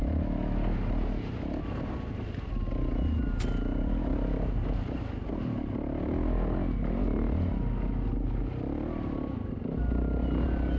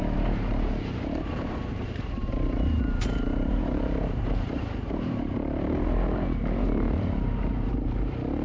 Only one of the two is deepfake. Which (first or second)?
second